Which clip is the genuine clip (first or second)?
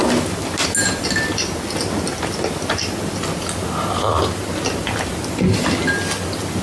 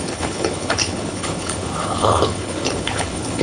first